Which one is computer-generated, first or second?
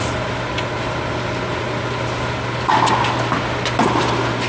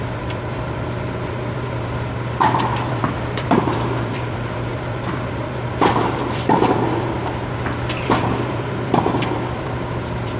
second